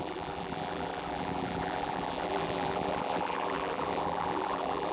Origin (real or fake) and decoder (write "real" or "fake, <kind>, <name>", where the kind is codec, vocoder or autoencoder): fake, vocoder, BigVGAN v2